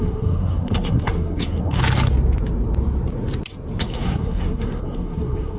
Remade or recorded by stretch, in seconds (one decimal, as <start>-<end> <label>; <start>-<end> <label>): 0.0-1.8 remade; 1.8-3.8 recorded; 3.8-5.6 remade